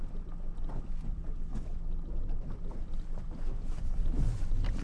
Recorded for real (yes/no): yes